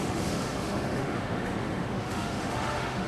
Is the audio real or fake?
fake